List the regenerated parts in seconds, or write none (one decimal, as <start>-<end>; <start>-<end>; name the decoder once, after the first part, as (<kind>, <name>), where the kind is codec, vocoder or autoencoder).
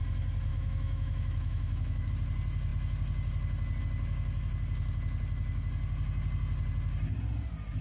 0.5-2.1 (autoencoder, DAC-VAE)